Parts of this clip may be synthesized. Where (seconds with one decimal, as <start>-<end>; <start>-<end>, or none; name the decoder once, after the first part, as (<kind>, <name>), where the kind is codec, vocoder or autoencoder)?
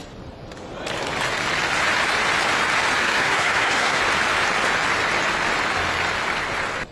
3.0-4.0 (codec, SNAC)